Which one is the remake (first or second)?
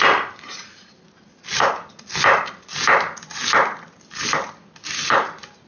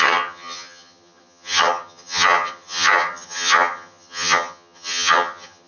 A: second